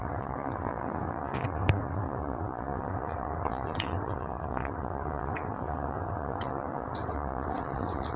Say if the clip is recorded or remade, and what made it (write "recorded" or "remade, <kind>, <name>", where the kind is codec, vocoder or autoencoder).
remade, vocoder, WaveNeXt